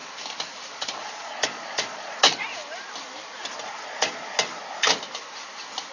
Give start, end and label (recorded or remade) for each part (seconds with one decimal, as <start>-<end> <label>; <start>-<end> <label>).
0.0-0.7 recorded; 0.7-2.5 remade; 2.5-3.7 recorded; 3.7-4.3 remade; 4.3-5.9 recorded